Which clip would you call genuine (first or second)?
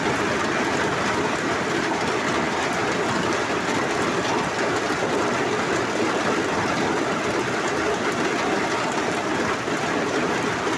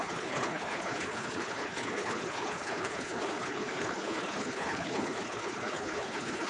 first